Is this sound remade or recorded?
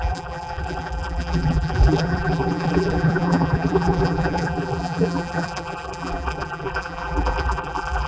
remade